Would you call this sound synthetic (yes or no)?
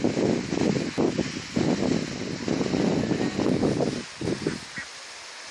no